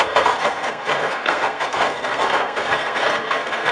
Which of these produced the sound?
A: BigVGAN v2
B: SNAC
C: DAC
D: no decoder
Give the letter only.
B